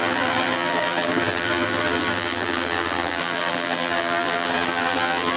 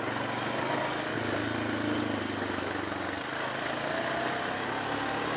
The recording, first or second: second